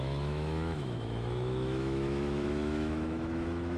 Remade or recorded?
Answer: remade